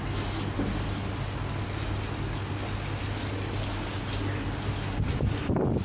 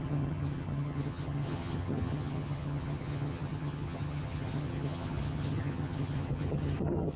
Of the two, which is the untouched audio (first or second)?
first